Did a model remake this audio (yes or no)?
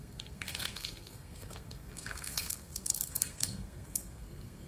yes